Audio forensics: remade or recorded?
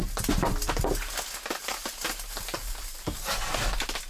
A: recorded